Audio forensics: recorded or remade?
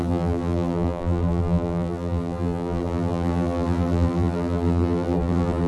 remade